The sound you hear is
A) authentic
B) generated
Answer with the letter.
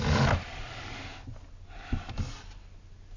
A